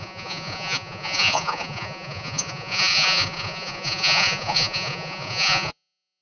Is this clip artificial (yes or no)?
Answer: yes